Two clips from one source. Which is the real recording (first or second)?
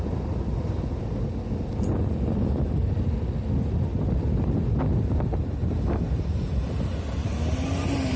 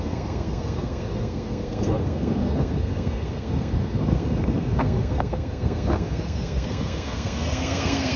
first